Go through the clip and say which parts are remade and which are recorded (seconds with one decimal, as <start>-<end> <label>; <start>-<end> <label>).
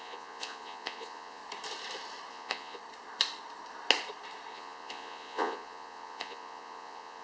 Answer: 0.0-1.4 remade; 1.4-2.3 recorded; 2.3-2.8 remade; 2.8-4.5 recorded; 4.5-7.2 remade